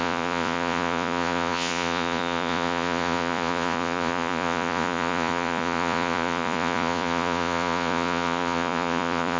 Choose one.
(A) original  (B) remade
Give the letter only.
B